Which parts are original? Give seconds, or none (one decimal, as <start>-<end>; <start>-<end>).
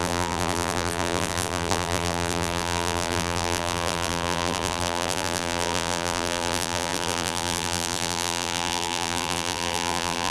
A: none